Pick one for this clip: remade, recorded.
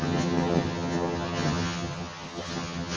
remade